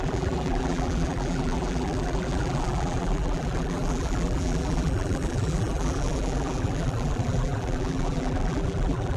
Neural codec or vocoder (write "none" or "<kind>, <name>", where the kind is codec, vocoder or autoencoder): vocoder, BigVGAN v2